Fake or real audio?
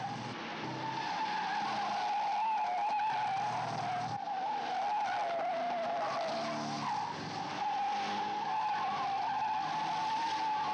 real